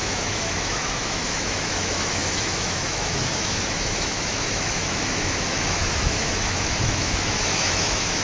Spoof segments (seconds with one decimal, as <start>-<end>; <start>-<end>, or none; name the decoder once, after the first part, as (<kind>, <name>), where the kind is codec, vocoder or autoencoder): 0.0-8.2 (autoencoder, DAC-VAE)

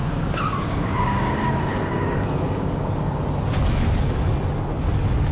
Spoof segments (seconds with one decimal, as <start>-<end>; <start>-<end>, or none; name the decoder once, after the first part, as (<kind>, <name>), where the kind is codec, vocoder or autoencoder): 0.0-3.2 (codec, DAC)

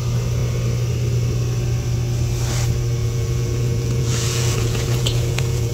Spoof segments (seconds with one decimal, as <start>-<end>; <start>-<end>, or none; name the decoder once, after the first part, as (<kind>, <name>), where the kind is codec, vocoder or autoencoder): 3.0-5.7 (vocoder, Vocos)

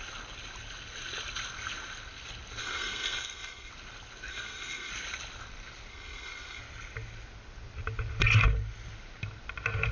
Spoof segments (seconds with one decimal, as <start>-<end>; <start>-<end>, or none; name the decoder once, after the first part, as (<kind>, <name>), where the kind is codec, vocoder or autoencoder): 2.6-3.7 (codec, SNAC); 4.3-4.9; 5.9-6.6

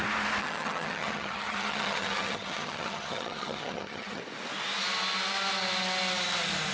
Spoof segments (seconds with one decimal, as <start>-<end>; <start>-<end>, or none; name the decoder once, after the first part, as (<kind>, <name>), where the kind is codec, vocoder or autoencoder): 0.4-4.2 (vocoder, HiFi-GAN)